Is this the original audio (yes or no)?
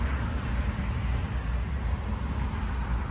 yes